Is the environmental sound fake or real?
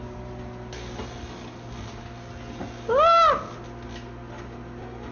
real